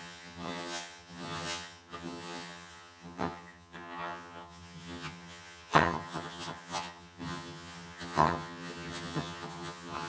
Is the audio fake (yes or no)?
yes